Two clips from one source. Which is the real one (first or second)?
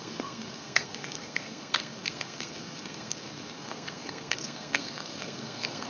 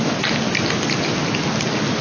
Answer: second